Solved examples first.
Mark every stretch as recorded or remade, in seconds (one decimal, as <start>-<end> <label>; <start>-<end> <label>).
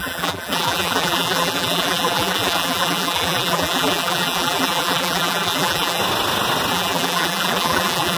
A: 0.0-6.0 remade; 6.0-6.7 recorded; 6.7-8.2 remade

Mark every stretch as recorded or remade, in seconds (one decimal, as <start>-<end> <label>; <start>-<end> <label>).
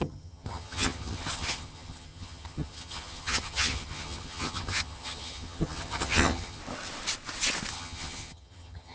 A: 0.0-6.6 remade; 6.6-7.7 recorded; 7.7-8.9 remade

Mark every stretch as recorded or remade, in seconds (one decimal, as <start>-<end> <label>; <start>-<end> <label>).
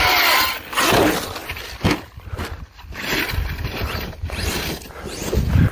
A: 0.0-5.7 recorded